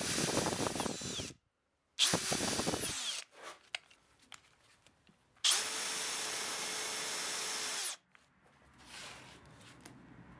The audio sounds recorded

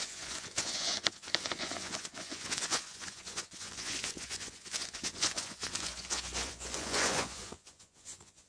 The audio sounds remade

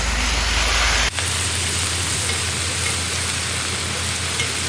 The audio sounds recorded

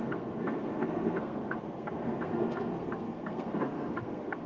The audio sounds remade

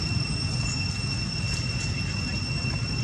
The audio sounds recorded